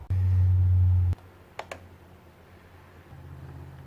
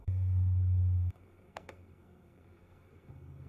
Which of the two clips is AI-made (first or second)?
second